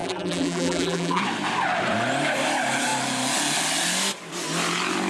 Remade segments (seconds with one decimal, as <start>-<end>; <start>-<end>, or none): 0.0-1.2